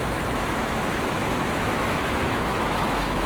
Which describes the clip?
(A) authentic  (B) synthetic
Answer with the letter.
B